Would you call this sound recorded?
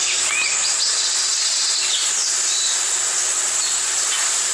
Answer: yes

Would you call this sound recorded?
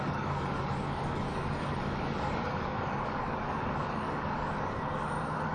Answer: no